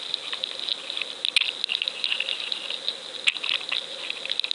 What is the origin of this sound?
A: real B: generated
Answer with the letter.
A